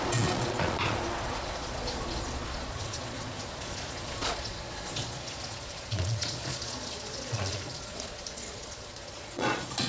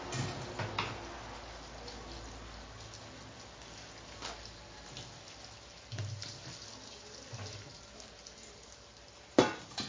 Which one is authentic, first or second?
second